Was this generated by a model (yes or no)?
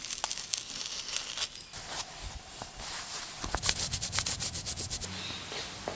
no